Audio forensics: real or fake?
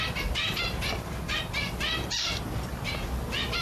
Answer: fake